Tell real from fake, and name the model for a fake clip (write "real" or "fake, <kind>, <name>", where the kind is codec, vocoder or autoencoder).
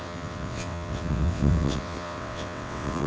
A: fake, vocoder, WaveNeXt